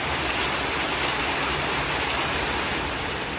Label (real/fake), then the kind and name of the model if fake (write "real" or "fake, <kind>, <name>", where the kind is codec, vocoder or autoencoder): real